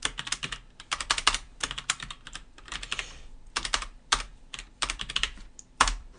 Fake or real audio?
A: fake